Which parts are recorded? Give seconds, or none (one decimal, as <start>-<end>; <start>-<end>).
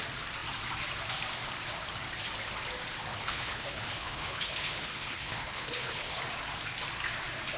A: 0.0-3.1; 6.2-7.6